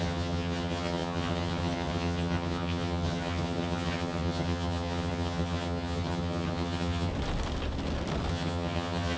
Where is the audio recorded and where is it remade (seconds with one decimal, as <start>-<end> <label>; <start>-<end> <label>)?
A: 0.0-7.1 remade; 7.1-8.3 recorded; 8.3-9.2 remade